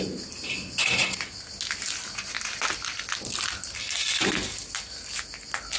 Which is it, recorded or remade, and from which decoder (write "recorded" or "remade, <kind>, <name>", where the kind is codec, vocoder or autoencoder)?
recorded